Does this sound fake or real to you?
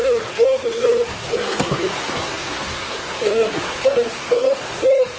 fake